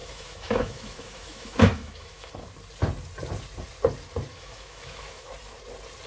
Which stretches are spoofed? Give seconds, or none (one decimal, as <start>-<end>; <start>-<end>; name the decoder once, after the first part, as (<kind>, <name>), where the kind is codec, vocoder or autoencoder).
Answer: 0.0-2.3 (autoencoder, DAC-VAE); 4.3-5.3